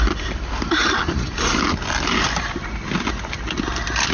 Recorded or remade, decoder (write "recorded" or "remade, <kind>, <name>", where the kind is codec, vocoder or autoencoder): recorded